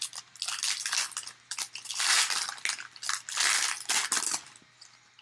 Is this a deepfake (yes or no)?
no